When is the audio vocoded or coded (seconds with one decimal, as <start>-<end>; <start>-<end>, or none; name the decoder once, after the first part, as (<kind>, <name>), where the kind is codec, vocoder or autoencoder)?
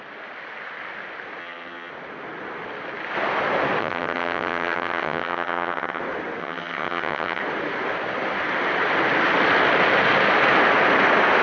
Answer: 1.4-1.9 (vocoder, HiFi-GAN); 3.8-6.0; 6.4-7.4